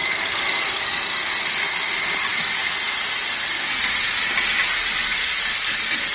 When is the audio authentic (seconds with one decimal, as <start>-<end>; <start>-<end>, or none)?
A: 0.0-6.1